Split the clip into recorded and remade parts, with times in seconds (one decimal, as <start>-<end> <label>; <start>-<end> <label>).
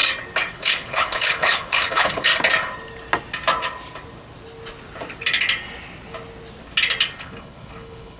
0.0-0.5 recorded; 0.5-2.3 remade; 2.3-7.2 recorded; 7.2-8.2 remade